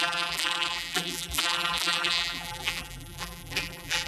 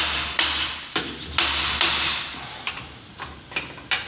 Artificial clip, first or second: first